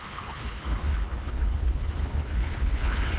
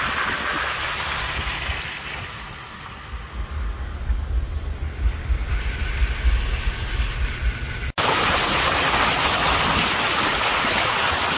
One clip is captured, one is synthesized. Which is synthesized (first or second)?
first